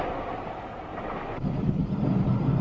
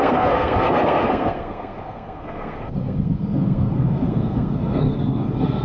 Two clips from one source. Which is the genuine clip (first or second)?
first